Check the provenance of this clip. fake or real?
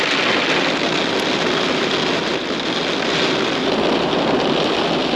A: real